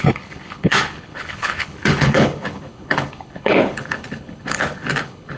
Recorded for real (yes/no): no